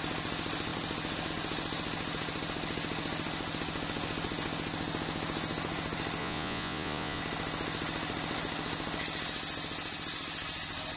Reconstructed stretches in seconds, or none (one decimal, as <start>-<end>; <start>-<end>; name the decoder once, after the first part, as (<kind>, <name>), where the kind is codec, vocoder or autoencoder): 6.2-7.2 (vocoder, Vocos)